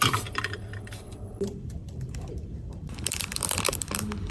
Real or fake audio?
fake